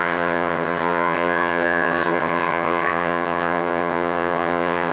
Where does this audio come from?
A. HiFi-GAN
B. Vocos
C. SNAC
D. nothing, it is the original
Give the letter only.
A